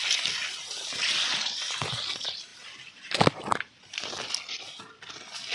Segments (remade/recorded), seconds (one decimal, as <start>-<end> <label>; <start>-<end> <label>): 0.0-5.5 recorded